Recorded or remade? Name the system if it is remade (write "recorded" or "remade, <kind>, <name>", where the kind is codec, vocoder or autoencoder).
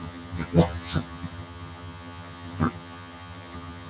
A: remade, vocoder, HiFi-GAN